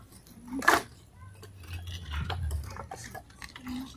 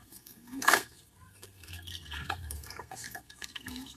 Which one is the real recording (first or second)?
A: first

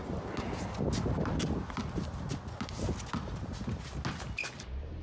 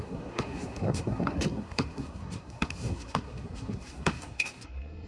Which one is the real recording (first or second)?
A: first